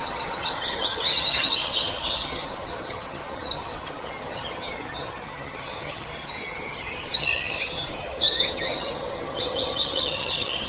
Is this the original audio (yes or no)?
no